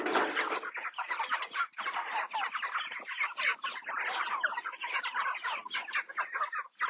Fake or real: real